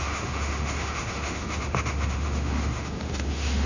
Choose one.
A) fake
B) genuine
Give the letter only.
A